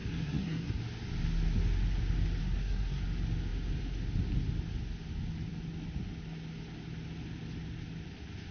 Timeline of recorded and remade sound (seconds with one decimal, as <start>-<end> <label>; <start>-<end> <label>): 0.0-0.8 remade; 0.8-2.4 recorded; 2.4-3.0 remade; 3.0-8.5 recorded